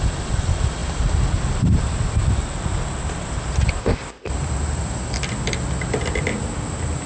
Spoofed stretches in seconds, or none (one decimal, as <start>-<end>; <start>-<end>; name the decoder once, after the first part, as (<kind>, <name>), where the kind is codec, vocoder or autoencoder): 3.8-4.3 (codec, ZipCodec)